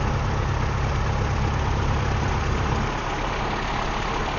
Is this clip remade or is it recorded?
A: recorded